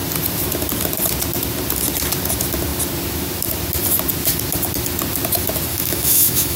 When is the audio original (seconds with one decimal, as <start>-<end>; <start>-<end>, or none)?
0.0-5.7